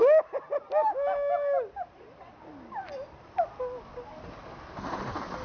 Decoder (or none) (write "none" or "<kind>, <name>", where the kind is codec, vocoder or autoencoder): none